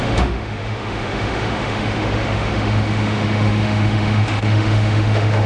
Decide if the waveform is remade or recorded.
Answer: remade